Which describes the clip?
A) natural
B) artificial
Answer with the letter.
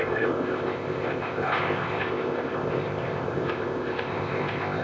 B